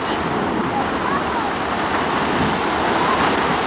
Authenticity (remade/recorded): recorded